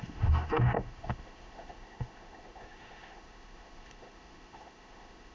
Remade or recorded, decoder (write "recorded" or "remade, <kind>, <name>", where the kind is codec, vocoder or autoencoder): remade, autoencoder, DAC-VAE